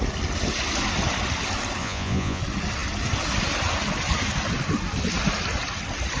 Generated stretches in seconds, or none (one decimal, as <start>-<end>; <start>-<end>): 1.8-2.4